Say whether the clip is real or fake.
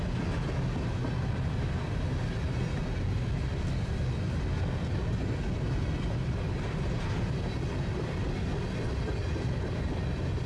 real